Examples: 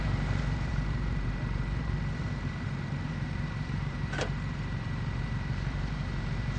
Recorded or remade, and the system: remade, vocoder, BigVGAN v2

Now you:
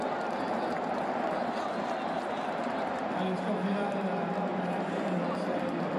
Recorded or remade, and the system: recorded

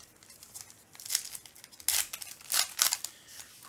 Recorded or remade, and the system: recorded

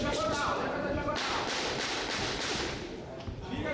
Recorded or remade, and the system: remade, vocoder, BigVGAN v2